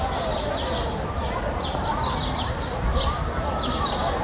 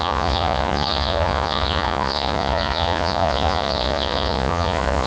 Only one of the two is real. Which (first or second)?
first